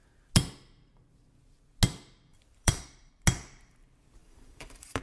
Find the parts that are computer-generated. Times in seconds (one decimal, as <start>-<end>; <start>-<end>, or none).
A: 2.3-3.1; 4.2-5.0